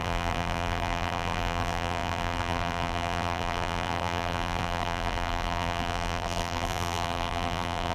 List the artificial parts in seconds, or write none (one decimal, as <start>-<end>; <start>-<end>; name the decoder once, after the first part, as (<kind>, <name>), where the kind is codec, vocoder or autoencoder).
0.0-7.9 (vocoder, BigVGAN v2)